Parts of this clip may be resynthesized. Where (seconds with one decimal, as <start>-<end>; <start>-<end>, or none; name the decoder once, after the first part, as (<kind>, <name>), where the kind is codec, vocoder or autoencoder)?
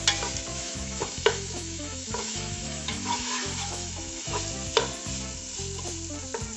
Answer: 0.5-4.4 (autoencoder, DAC-VAE)